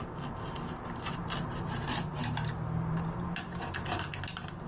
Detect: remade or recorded recorded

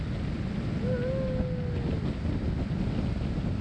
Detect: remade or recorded recorded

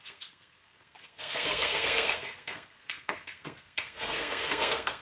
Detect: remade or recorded remade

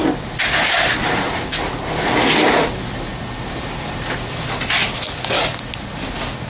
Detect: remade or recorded recorded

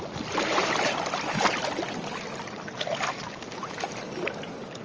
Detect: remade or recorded recorded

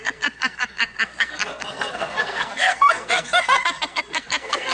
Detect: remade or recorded remade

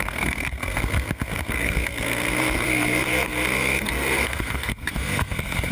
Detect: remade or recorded remade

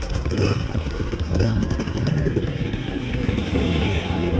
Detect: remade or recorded remade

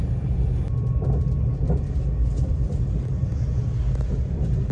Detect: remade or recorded recorded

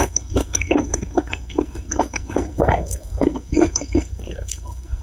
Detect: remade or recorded remade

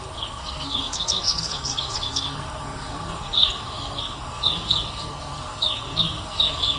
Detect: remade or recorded remade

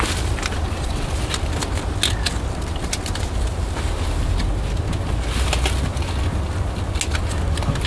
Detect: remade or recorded recorded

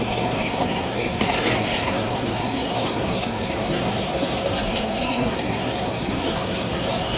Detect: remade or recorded remade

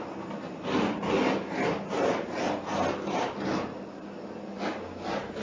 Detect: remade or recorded recorded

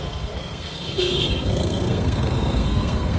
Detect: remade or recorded remade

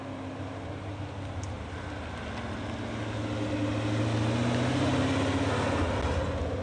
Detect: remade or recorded recorded